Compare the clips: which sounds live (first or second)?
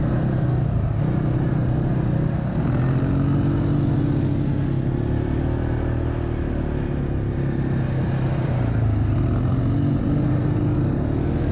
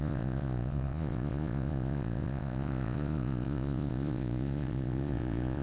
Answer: first